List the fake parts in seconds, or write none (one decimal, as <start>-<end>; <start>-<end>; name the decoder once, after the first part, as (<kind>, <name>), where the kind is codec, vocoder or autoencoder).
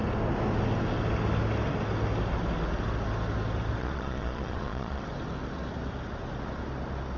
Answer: 3.8-5.0 (vocoder, Vocos)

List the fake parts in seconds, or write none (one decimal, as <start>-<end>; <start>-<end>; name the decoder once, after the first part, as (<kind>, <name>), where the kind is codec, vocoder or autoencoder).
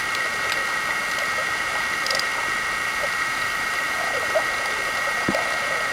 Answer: none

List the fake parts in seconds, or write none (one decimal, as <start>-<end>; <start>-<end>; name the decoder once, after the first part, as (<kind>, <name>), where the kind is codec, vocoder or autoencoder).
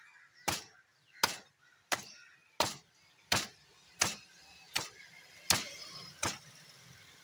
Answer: none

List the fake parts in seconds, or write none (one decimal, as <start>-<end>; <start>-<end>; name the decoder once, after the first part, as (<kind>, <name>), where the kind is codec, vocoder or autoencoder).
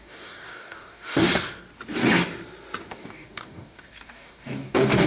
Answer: 0.0-1.3 (codec, DAC); 2.9-5.1